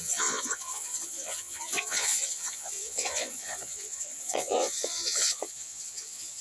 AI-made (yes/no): yes